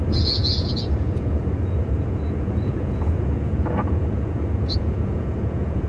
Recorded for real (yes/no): no